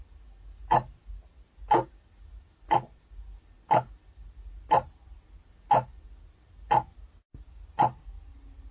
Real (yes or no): yes